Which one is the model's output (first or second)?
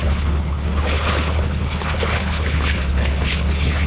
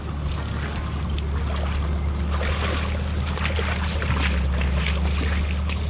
first